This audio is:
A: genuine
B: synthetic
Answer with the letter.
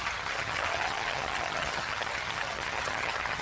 B